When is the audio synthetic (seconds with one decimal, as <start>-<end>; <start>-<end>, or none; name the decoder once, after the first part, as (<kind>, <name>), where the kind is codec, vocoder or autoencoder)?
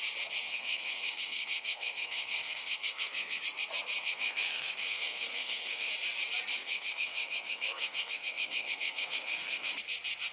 0.5-3.4 (codec, SNAC); 4.0-5.9; 6.6-9.7